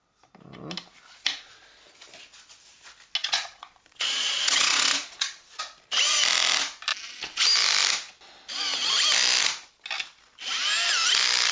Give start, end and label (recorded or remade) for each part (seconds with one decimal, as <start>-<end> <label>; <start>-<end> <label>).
0.0-3.2 recorded; 3.2-5.6 remade; 5.6-11.5 recorded